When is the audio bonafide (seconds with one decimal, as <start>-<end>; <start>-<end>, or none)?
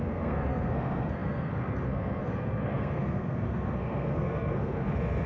none